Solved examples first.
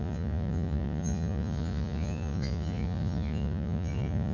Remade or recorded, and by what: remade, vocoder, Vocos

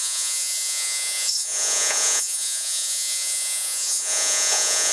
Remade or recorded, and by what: remade, vocoder, Vocos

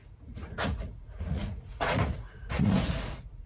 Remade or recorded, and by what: remade, vocoder, Vocos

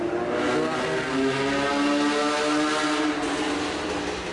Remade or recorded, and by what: recorded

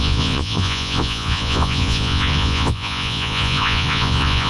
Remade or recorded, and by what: remade, vocoder, Vocos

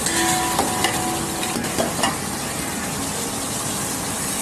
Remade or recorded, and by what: recorded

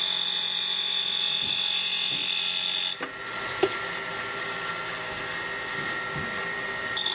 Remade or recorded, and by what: recorded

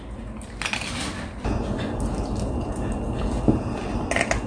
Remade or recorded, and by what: recorded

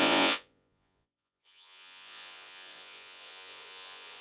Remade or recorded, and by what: remade, vocoder, Vocos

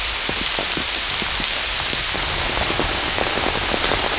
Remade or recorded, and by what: recorded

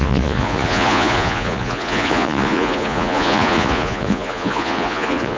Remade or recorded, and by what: remade, vocoder, Vocos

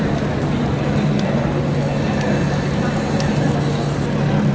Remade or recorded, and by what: recorded